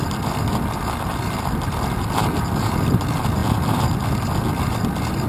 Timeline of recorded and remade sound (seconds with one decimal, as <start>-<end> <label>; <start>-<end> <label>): 0.0-5.3 recorded